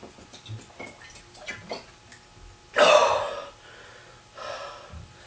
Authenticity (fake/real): real